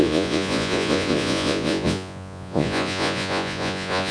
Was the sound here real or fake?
fake